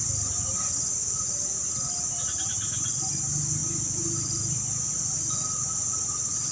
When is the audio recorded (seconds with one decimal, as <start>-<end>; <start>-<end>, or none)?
0.0-3.6; 4.9-6.5